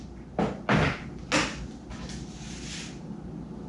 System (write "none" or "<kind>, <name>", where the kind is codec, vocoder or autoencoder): none